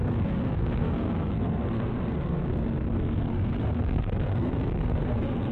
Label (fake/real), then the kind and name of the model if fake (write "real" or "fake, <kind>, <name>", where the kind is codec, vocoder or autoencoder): fake, codec, SNAC